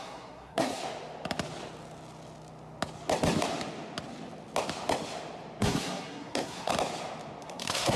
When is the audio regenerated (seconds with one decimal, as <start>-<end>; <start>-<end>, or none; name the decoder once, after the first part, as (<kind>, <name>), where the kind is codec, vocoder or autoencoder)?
0.0-0.8 (codec, SNAC); 5.6-6.7; 7.4-8.0